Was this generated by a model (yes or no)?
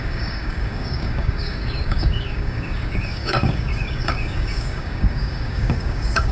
yes